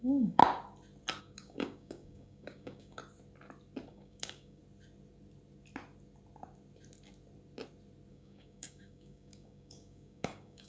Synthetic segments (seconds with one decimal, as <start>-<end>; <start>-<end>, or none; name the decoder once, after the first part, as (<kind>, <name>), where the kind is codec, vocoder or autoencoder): 0.0-0.4 (codec, DAC); 1.2-3.0; 3.9-4.6; 8.1-10.7